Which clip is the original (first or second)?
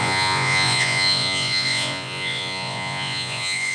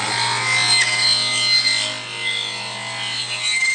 second